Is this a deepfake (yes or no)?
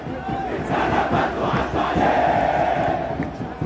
no